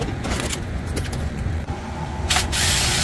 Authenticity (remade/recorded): remade